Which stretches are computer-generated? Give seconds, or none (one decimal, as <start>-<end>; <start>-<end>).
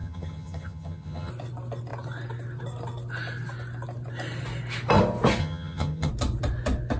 0.0-1.3; 5.4-6.1